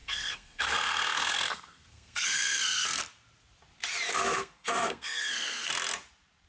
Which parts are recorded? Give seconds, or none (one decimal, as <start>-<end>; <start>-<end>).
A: 3.0-4.1; 5.7-6.5